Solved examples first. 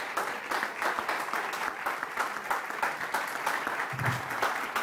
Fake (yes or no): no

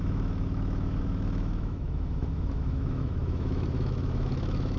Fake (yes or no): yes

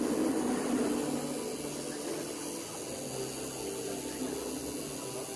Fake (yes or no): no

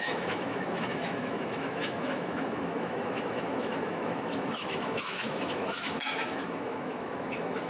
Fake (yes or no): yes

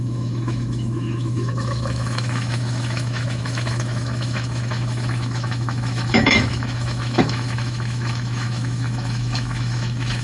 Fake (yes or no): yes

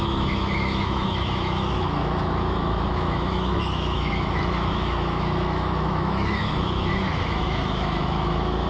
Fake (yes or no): yes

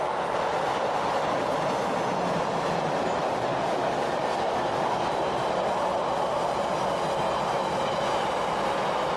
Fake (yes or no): no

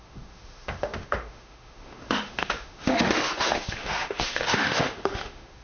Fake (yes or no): yes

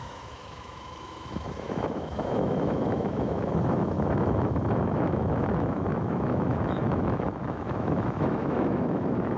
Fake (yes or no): yes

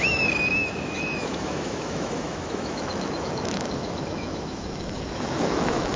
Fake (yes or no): yes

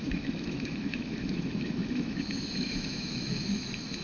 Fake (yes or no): yes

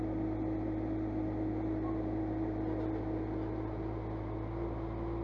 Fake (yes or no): no